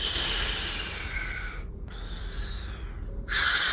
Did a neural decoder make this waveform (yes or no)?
no